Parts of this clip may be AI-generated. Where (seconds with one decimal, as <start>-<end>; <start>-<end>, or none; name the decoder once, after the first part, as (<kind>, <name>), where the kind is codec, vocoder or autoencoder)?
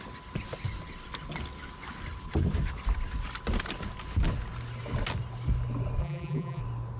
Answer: 6.0-6.6 (vocoder, BigVGAN v2)